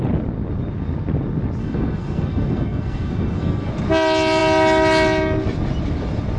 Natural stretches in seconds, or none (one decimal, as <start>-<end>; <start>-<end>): 0.0-1.6; 3.7-6.4